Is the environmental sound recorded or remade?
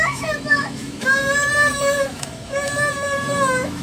remade